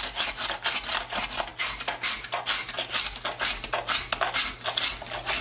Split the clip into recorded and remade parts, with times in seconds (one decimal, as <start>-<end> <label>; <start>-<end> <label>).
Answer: 0.0-5.4 recorded